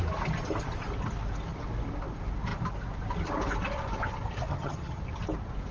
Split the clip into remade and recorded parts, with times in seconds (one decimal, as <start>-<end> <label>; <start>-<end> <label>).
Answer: 0.0-4.5 recorded; 4.5-5.0 remade; 5.0-5.7 recorded